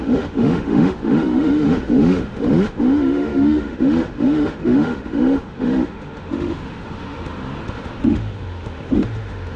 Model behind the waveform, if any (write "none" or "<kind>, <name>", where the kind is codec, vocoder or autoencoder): autoencoder, DAC-VAE